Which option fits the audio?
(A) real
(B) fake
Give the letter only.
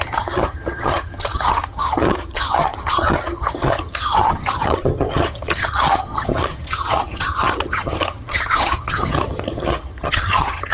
B